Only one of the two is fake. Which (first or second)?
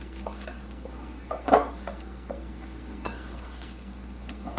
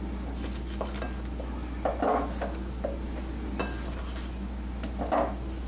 first